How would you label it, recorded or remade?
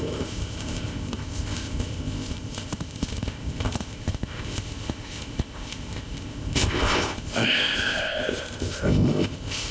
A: remade